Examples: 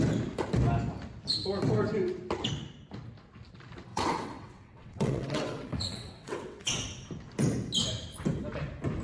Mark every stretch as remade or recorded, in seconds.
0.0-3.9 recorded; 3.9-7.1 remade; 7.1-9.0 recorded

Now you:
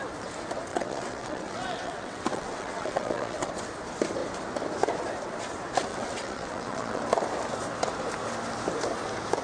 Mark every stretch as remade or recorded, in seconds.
0.0-0.7 recorded; 0.7-3.5 remade; 3.5-5.9 recorded; 5.9-7.0 remade; 7.0-9.4 recorded